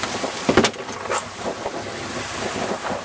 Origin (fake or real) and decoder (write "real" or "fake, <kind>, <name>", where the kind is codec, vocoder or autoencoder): real